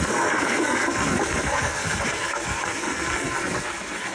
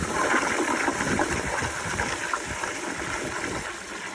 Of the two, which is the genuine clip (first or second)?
second